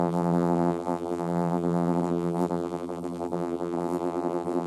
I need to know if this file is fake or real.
fake